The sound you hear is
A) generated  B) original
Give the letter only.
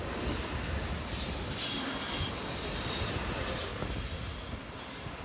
B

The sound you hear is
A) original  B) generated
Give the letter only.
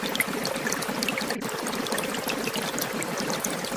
A